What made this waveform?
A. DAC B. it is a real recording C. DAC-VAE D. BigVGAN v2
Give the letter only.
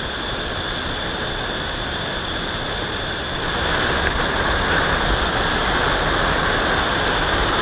B